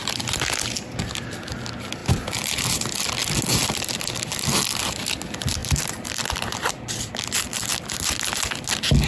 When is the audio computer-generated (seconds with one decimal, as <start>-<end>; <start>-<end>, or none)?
2.0-3.1; 3.6-4.6; 5.6-7.7